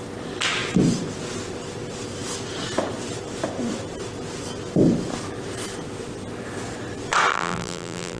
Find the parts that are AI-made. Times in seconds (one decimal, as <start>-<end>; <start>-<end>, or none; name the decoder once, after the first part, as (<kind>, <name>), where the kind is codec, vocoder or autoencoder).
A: 7.3-8.2 (vocoder, BigVGAN v2)